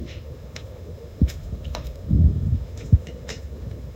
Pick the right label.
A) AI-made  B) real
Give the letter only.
A